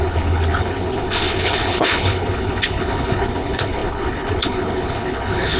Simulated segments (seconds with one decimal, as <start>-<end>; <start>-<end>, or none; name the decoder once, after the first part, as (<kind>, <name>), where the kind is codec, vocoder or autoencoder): 0.0-5.6 (codec, HILCodec)